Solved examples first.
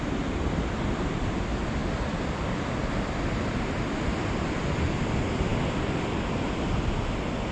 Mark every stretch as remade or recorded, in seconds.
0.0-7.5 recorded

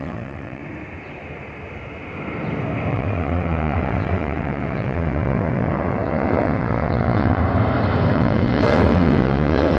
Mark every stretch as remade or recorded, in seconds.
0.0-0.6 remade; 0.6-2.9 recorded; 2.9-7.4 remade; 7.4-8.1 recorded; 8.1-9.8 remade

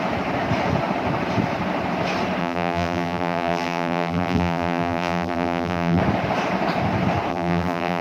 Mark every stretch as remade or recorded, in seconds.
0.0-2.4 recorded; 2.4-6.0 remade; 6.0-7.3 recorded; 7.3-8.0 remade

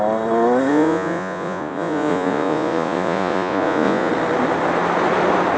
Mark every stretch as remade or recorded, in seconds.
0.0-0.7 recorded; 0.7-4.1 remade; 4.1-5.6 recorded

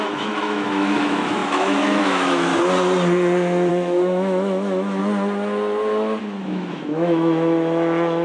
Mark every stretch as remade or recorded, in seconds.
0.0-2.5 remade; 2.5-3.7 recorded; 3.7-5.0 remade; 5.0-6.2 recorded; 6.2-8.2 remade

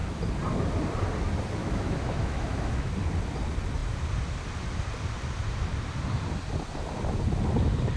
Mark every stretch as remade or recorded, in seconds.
0.0-1.6 recorded; 1.6-2.9 remade; 2.9-8.0 recorded

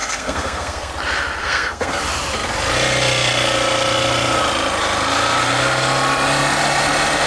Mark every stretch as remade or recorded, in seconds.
0.0-0.9 remade; 0.9-1.4 recorded; 1.4-2.0 remade; 2.0-7.3 recorded

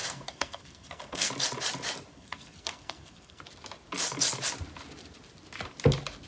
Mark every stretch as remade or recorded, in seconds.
0.0-1.3 remade; 1.3-2.1 recorded; 2.1-3.4 remade; 3.4-6.3 recorded